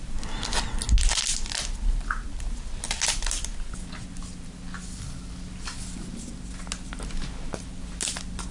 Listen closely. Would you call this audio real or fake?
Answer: real